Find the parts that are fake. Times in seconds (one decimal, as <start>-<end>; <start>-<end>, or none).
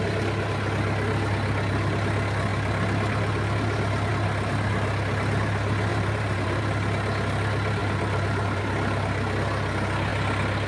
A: 5.9-6.6; 7.8-8.6